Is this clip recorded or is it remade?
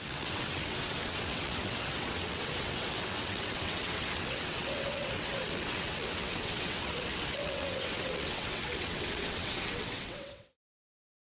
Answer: remade